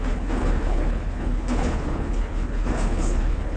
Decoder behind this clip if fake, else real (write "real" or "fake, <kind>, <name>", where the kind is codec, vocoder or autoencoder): fake, codec, HILCodec